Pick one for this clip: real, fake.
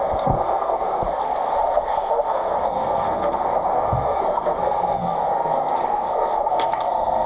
fake